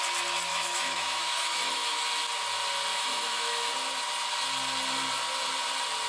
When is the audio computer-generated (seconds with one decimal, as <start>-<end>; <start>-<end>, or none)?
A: 0.5-2.0; 2.9-3.7